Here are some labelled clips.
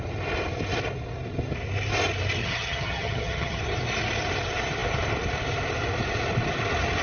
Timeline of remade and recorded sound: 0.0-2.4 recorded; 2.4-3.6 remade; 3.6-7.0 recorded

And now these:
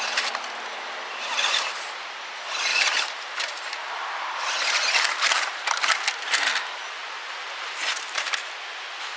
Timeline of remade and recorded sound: 0.0-1.1 recorded; 1.1-2.3 remade; 2.3-2.7 recorded; 2.7-5.8 remade; 5.8-7.0 recorded; 7.0-8.7 remade; 8.7-9.2 recorded